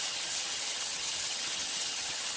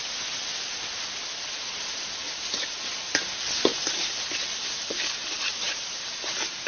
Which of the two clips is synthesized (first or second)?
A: first